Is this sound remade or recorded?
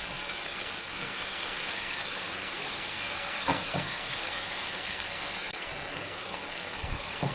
remade